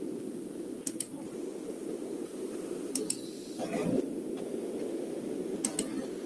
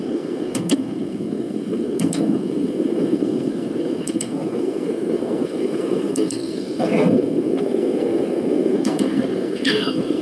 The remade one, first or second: second